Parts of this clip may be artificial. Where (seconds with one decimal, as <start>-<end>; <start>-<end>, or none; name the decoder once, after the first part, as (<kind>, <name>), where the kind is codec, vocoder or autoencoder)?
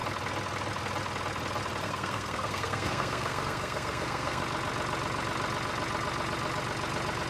1.8-4.4 (codec, SNAC)